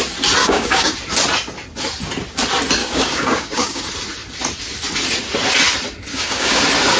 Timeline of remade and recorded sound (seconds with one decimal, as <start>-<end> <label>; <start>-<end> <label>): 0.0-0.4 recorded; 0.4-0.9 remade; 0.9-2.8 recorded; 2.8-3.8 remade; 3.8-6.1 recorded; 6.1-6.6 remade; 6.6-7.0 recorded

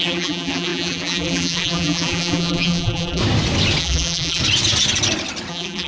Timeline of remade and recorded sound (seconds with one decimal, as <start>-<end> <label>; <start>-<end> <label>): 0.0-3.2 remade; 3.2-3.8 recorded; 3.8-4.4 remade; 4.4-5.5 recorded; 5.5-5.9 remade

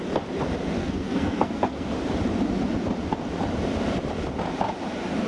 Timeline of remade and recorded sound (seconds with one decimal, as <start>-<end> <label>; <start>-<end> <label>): 0.0-0.8 recorded; 0.8-1.9 remade; 1.9-5.3 recorded

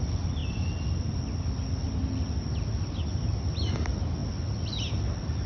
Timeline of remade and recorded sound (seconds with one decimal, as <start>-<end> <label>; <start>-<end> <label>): 0.0-5.5 recorded

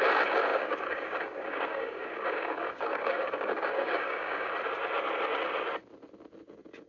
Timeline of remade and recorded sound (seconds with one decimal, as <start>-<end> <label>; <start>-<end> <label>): 0.0-0.5 recorded; 0.5-4.5 remade; 4.5-6.9 recorded

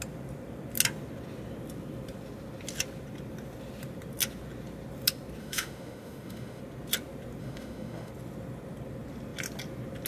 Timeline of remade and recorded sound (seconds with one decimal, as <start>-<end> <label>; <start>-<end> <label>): 0.0-5.4 recorded; 5.4-6.6 remade; 6.6-7.4 recorded; 7.4-8.1 remade; 8.1-10.1 recorded

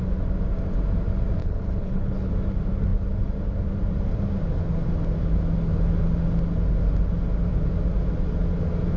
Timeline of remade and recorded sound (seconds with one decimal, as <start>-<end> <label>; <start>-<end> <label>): 0.0-1.4 recorded; 1.4-2.3 remade; 2.3-9.0 recorded

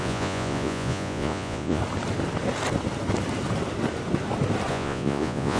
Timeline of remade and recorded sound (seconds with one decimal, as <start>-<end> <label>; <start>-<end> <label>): 0.0-1.8 remade; 1.8-4.7 recorded; 4.7-5.6 remade